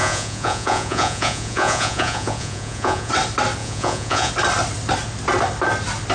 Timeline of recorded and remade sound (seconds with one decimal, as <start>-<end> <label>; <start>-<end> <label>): 0.0-3.1 remade; 3.1-3.6 recorded; 3.6-4.3 remade; 4.3-6.1 recorded